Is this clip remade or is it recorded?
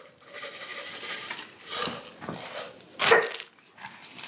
recorded